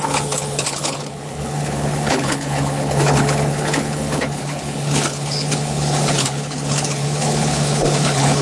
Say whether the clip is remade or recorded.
remade